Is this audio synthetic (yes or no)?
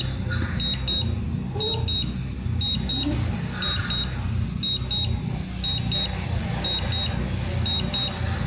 no